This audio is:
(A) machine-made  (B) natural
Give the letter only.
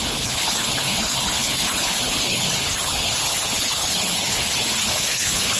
A